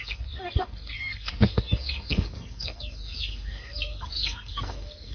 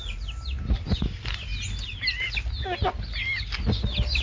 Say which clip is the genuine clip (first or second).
second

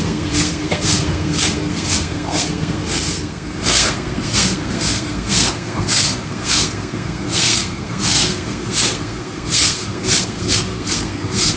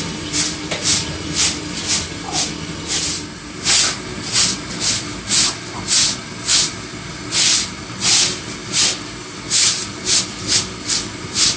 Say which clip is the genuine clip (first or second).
second